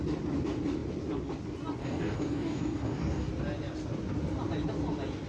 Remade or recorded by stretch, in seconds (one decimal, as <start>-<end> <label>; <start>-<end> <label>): 0.0-1.8 recorded; 1.8-3.3 remade; 3.3-5.3 recorded